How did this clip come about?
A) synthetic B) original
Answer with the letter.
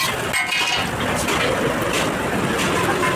B